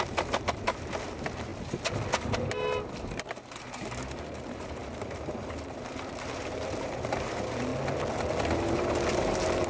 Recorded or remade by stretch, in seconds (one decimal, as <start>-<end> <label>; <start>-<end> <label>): 0.0-1.5 remade; 1.5-3.0 recorded; 3.0-7.7 remade; 7.7-8.7 recorded; 8.7-9.7 remade